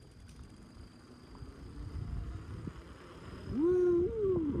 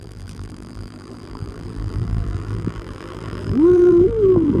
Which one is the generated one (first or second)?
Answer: second